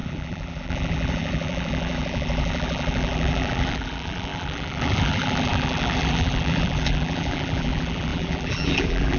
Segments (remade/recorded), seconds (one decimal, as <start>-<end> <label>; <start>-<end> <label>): 0.0-9.2 remade